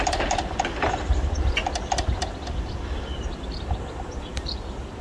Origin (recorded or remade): recorded